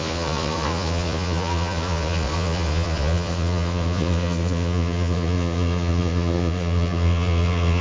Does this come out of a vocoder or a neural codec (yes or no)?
yes